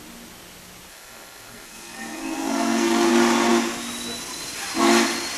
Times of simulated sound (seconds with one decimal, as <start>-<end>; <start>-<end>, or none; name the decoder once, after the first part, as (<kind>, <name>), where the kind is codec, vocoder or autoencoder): 0.9-3.1 (codec, SNAC)